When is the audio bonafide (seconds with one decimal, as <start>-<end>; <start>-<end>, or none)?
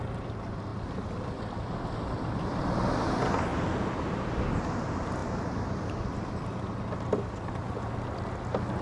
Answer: 0.0-0.7; 2.7-8.8